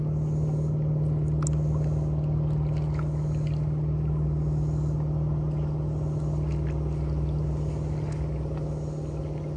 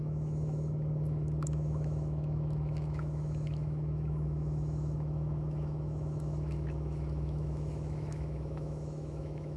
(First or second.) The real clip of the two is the first